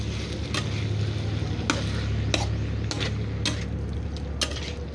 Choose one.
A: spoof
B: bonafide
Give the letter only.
B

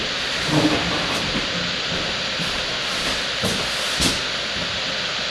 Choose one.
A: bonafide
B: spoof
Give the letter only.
A